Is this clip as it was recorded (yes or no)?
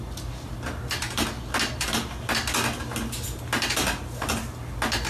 yes